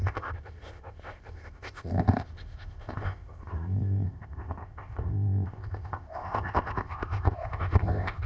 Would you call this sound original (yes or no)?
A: no